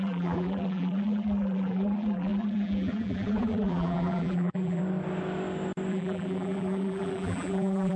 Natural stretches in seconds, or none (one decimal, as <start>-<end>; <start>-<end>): 4.8-5.9